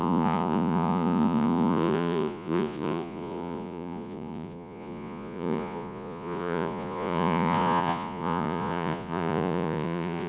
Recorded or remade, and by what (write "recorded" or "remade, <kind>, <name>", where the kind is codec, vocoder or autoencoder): remade, vocoder, Vocos